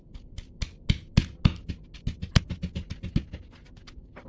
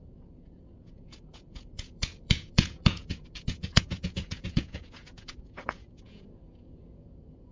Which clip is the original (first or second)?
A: first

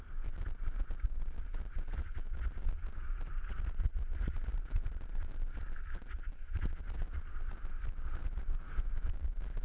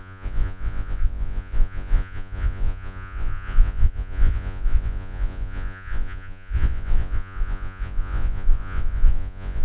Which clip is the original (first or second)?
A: first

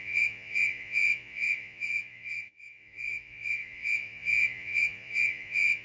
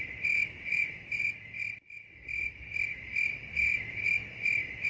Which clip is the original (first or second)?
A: second